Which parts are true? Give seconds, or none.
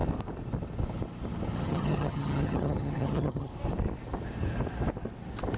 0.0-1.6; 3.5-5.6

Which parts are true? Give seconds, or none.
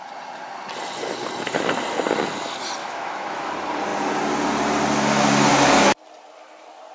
0.0-2.8; 3.5-6.9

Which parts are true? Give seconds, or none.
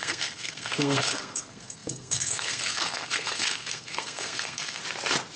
4.8-5.4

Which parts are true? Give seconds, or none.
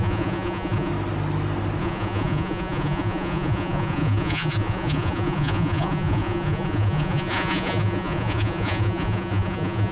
0.9-1.8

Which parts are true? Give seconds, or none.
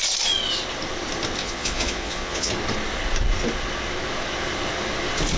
0.0-1.4; 2.5-5.4